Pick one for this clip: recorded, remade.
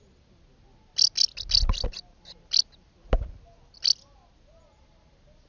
recorded